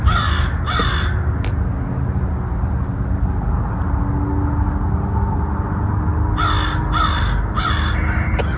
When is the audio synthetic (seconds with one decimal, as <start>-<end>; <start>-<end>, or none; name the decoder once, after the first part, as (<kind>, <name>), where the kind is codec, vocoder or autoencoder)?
none